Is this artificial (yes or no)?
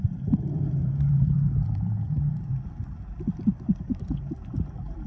yes